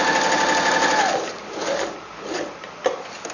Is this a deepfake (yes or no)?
no